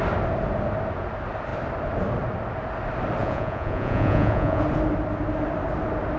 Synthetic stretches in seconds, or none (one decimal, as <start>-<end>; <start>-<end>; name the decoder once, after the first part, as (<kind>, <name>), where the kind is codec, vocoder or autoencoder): 3.2-4.6 (vocoder, Vocos)